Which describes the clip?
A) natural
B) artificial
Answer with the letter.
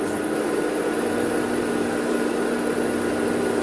A